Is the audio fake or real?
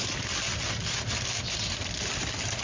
real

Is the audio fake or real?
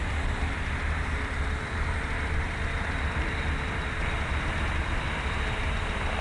fake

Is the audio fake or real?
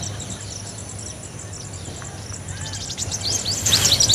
fake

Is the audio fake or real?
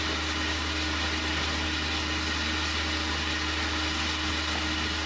real